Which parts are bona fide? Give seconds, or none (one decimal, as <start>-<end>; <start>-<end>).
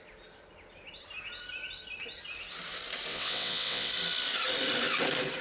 0.0-3.1; 3.9-5.4